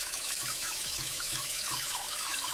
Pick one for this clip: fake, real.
fake